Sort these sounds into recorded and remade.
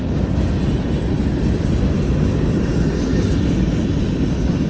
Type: recorded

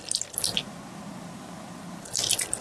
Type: recorded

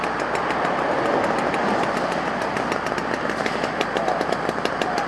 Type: recorded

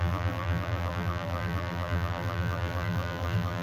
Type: remade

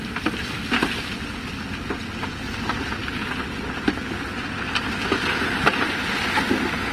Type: recorded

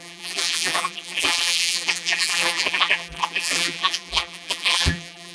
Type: remade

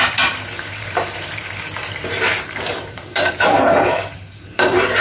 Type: remade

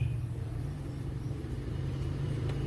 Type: remade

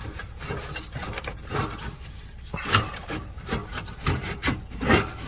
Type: remade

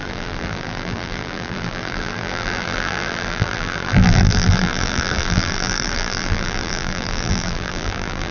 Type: remade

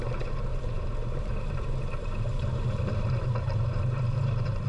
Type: remade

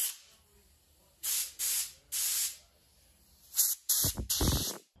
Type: recorded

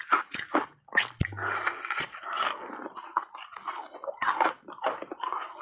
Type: recorded